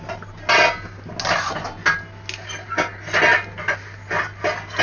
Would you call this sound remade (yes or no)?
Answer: no